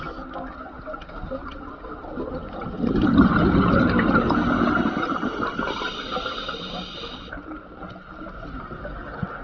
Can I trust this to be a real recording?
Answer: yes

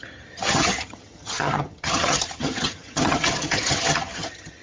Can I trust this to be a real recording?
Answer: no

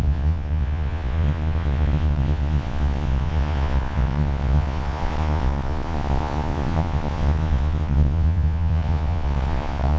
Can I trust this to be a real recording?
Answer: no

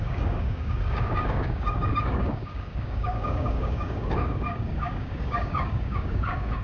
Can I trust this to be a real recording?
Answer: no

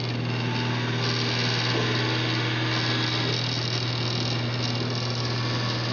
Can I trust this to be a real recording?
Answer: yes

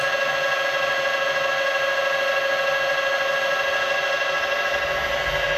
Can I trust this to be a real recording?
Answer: yes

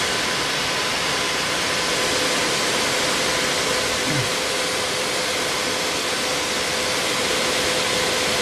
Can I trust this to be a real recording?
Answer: yes